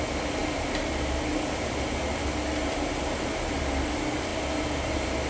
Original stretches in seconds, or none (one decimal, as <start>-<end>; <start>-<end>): 0.0-5.3